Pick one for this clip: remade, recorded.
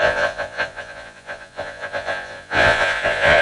remade